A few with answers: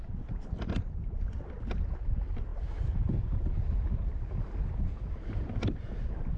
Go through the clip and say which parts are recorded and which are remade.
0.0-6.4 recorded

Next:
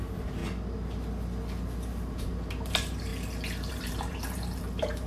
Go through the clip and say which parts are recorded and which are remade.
0.0-0.4 remade; 0.4-1.9 recorded; 1.9-3.1 remade; 3.1-3.7 recorded; 3.7-5.1 remade

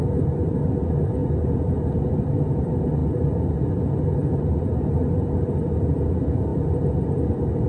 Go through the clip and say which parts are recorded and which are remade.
0.0-7.7 recorded

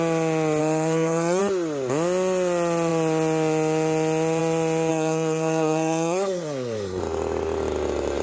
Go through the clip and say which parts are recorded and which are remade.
0.0-0.6 recorded; 0.6-1.4 remade; 1.4-4.9 recorded; 4.9-7.0 remade; 7.0-8.2 recorded

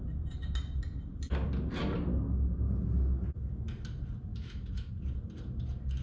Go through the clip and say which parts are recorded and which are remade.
0.0-4.3 recorded; 4.3-4.9 remade; 4.9-6.0 recorded

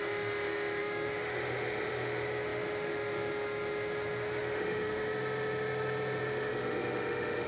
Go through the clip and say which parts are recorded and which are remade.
0.0-7.5 remade

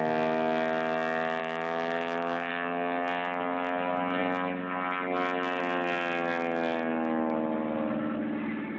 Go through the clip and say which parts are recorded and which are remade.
0.0-1.4 recorded; 1.4-2.5 remade; 2.5-8.8 recorded